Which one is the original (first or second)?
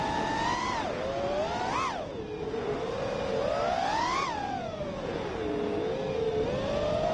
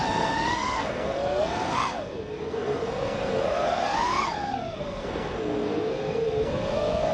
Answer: first